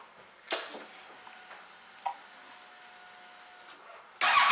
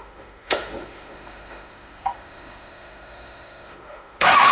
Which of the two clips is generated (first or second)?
second